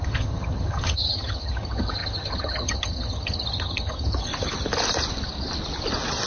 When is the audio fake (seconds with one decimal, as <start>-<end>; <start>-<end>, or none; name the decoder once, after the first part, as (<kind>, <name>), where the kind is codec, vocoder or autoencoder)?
0.0-4.3 (vocoder, HiFi-GAN)